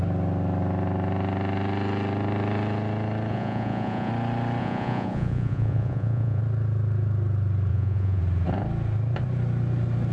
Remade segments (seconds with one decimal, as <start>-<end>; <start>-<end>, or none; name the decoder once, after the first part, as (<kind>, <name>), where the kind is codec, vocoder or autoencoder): 3.3-4.1 (vocoder, Vocos); 4.6-6.4; 7.7-8.2